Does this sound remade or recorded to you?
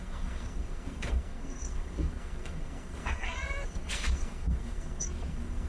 remade